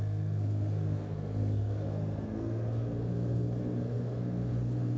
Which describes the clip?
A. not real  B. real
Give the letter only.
A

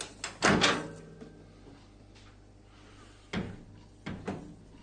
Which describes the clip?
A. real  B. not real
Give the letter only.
A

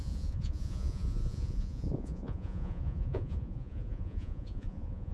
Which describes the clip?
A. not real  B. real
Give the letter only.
A